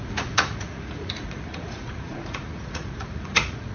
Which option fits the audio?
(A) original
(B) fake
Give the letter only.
B